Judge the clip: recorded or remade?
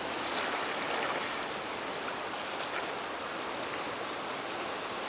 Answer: recorded